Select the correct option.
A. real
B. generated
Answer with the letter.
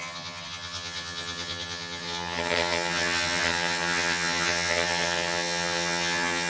B